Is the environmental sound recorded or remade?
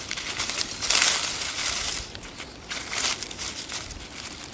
recorded